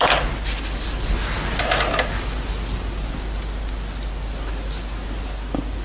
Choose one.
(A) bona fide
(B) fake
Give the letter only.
A